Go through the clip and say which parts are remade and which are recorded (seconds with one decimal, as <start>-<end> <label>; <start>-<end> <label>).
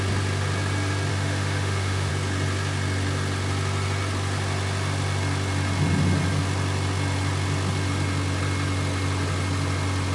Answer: 0.0-1.1 recorded; 1.1-2.1 remade; 2.1-10.1 recorded